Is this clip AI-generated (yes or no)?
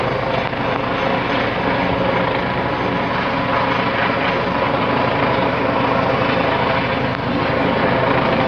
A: no